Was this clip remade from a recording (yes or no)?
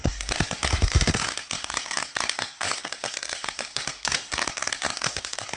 yes